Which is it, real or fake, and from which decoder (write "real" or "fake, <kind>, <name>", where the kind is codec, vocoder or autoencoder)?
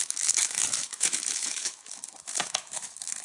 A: fake, autoencoder, DAC-VAE